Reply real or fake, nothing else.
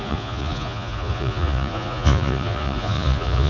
fake